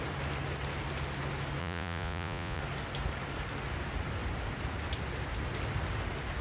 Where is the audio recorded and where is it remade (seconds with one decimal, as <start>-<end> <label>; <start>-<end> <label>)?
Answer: 0.0-1.6 recorded; 1.6-2.6 remade; 2.6-6.4 recorded